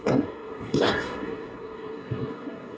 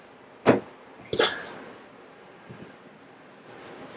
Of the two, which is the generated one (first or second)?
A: first